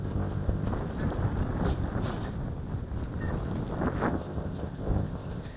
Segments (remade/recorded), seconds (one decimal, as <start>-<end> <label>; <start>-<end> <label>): 0.0-0.7 remade; 0.7-4.1 recorded; 4.1-5.6 remade